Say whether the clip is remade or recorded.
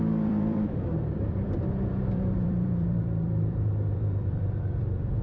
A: remade